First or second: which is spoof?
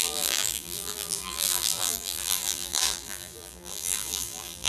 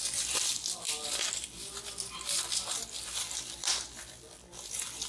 first